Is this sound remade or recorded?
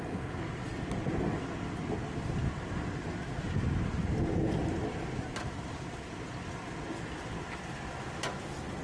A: recorded